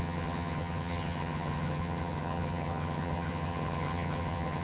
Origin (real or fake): fake